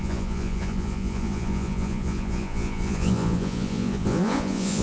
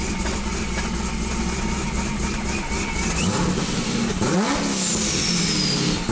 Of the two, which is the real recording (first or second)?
second